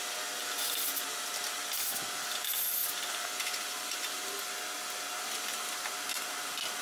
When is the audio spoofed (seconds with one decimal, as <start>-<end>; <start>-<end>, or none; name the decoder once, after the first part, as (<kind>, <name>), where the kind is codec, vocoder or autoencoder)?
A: none